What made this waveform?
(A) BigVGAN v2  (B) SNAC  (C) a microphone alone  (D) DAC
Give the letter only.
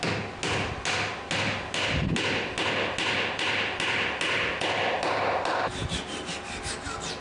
C